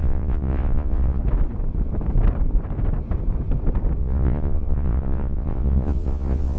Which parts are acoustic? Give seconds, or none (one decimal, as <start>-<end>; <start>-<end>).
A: 1.2-4.0